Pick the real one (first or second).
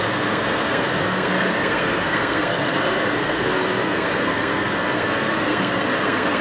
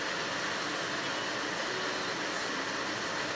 second